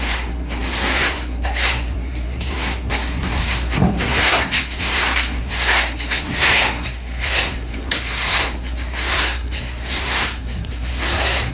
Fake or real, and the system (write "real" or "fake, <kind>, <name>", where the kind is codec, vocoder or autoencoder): fake, codec, SNAC